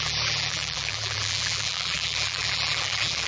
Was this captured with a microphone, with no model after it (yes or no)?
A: no